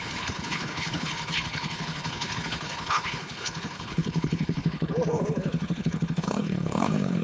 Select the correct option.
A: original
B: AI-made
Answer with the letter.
B